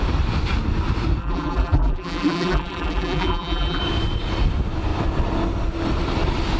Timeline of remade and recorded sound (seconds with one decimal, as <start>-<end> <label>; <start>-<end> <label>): 0.0-1.2 recorded; 1.2-3.8 remade; 3.8-6.6 recorded